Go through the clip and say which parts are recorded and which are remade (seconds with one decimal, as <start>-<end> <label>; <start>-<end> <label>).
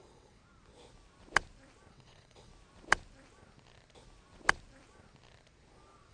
0.0-0.4 remade; 0.4-1.9 recorded; 1.9-2.5 remade; 2.5-6.1 recorded